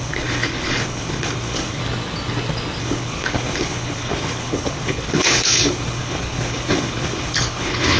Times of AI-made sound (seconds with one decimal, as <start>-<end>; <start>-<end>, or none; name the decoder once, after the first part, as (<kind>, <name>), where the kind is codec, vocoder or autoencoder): 0.0-1.8 (codec, HILCodec); 2.8-8.0